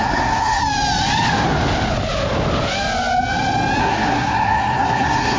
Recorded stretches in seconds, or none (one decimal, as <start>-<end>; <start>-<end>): 0.6-3.8